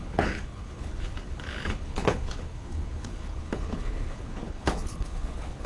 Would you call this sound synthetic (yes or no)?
yes